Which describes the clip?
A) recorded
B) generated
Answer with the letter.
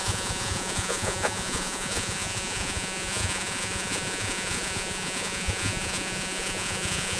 B